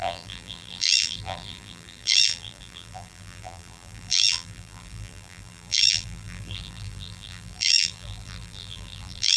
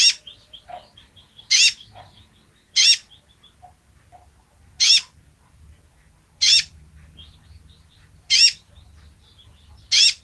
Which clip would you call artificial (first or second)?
first